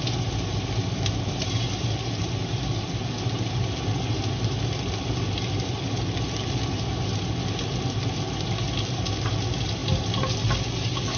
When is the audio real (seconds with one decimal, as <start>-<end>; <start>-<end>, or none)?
0.0-11.2